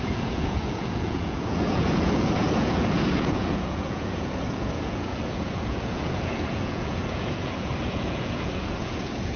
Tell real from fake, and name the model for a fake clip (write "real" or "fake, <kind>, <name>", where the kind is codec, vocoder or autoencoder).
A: fake, vocoder, Vocos